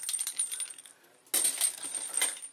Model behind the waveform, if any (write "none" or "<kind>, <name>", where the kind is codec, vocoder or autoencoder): none